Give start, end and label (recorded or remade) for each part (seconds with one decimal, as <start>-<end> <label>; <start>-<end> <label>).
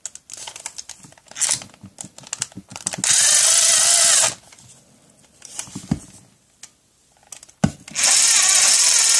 0.0-9.2 recorded